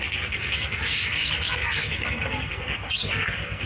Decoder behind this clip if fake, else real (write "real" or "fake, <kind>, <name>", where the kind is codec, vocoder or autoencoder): fake, codec, SNAC